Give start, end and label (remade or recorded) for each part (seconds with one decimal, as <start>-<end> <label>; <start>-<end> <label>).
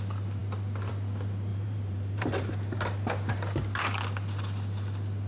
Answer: 0.0-1.5 recorded; 1.5-2.5 remade; 2.5-5.3 recorded